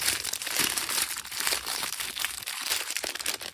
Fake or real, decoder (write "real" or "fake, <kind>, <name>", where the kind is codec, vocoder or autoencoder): fake, vocoder, BigVGAN v2